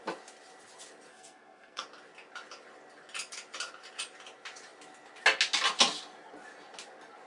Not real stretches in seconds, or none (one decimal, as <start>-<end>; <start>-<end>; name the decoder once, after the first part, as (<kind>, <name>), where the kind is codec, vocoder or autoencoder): 1.1-1.8 (codec, SNAC)